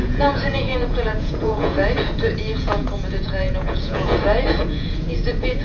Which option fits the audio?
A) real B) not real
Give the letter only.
B